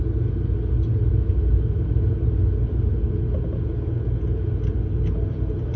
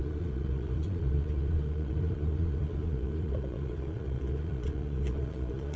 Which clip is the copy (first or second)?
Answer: second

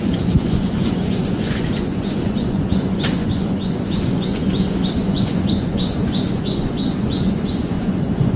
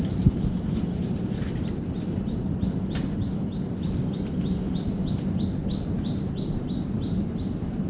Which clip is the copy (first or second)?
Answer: first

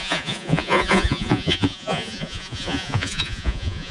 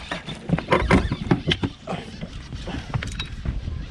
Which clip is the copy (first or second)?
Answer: first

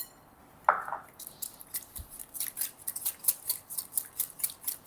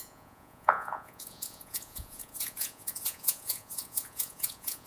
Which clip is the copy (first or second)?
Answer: second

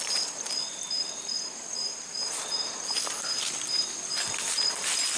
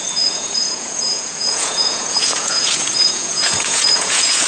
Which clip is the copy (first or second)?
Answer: second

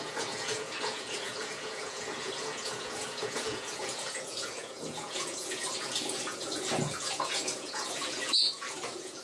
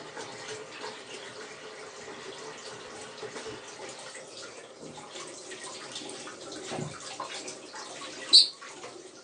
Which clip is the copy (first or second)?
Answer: first